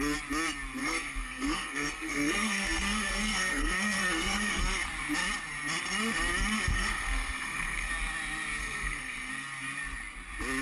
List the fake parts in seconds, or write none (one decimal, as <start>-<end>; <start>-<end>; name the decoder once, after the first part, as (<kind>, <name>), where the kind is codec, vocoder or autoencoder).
0.8-4.6 (codec, SNAC); 6.7-7.9; 8.6-9.3